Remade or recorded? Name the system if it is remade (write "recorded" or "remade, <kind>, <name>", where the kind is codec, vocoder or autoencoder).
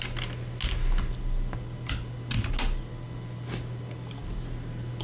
recorded